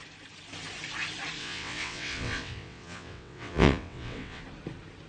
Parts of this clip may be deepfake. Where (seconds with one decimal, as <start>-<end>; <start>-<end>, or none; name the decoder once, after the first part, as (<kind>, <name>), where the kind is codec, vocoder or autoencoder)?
1.4-4.4 (vocoder, WaveNeXt)